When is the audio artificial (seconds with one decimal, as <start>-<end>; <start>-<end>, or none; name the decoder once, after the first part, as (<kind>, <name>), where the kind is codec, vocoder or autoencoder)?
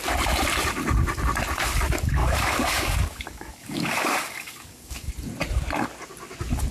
2.2-5.1 (codec, DAC)